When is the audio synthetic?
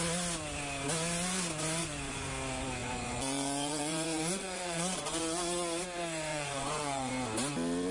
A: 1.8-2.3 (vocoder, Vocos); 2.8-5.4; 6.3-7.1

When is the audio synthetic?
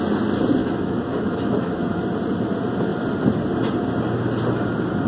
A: 0.6-2.0 (autoencoder, DAC-VAE)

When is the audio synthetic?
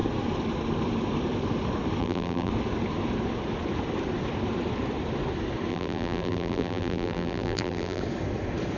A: 2.0-2.5 (vocoder, BigVGAN v2); 5.7-8.0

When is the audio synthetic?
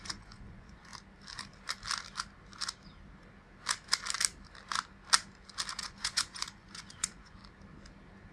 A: 0.0-0.9 (vocoder, Vocos); 5.7-7.4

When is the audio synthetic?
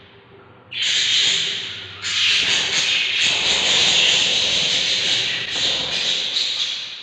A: 3.8-5.9 (vocoder, BigVGAN v2)